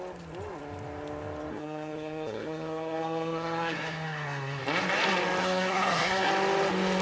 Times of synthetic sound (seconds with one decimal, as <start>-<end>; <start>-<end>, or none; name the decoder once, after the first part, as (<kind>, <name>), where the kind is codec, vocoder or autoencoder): 1.5-4.6 (codec, SNAC); 5.4-6.3